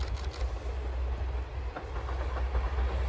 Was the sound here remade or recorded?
recorded